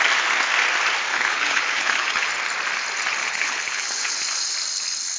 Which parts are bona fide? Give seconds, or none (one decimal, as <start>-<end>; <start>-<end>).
0.0-1.1; 2.3-3.2; 4.2-5.2